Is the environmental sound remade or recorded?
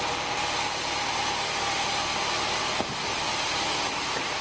recorded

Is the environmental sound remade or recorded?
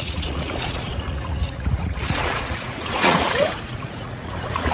remade